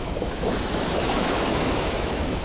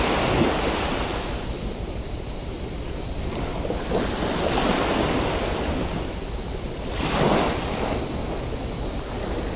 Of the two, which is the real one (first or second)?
second